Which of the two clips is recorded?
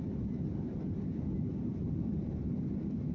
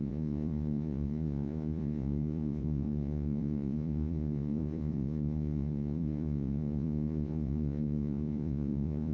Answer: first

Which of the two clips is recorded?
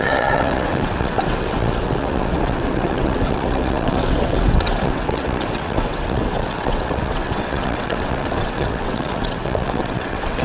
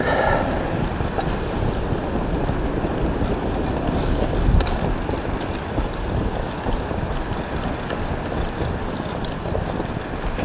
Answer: second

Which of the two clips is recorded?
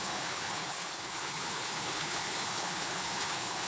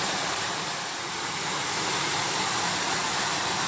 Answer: second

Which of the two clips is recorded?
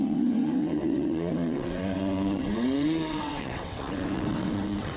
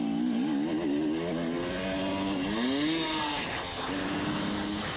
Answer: second